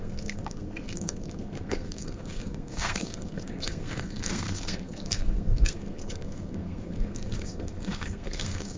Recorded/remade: remade